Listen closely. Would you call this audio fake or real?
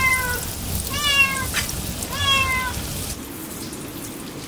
real